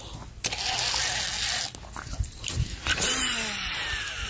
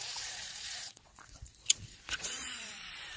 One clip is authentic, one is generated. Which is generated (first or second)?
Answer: second